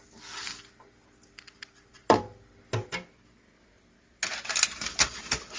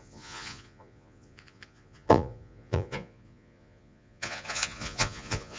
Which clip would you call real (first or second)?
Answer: first